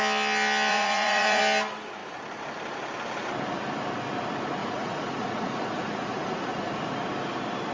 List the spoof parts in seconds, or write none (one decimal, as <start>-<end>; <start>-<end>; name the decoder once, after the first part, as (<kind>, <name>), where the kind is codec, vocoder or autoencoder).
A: 0.7-1.4 (vocoder, Vocos); 4.6-6.7